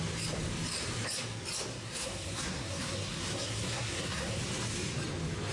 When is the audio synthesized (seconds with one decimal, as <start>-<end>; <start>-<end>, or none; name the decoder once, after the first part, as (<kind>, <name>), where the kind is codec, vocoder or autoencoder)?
1.7-4.4 (codec, SNAC)